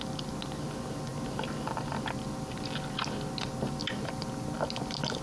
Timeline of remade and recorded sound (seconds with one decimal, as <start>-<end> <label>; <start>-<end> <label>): 0.0-5.2 recorded